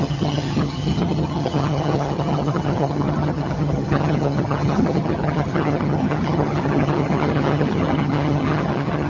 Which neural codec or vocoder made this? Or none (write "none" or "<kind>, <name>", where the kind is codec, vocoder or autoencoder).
vocoder, HiFi-GAN